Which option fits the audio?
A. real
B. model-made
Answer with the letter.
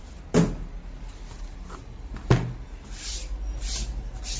A